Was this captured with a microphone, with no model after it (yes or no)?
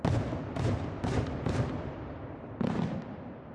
yes